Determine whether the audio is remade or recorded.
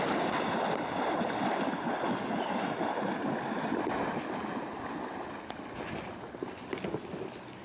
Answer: recorded